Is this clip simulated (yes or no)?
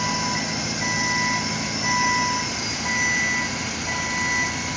no